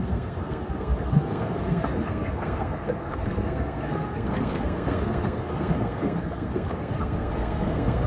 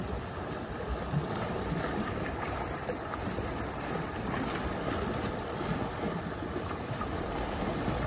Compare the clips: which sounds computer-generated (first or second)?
first